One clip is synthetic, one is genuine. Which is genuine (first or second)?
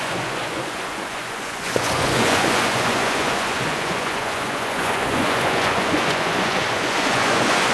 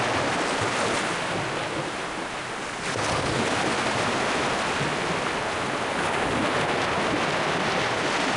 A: second